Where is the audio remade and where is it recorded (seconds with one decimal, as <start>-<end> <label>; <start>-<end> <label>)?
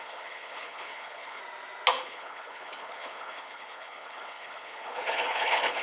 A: 0.0-1.4 remade; 1.4-2.0 recorded; 2.0-5.8 remade